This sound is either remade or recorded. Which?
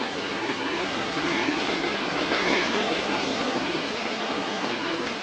remade